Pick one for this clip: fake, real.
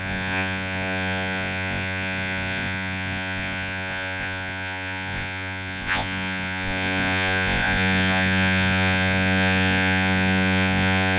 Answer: fake